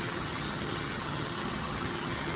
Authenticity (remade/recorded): remade